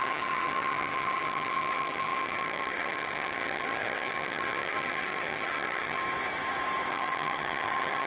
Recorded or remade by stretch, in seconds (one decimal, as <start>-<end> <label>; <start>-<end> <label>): 0.0-6.0 remade; 6.0-6.9 recorded; 6.9-8.1 remade